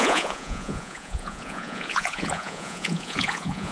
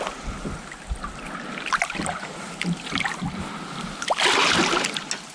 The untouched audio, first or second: second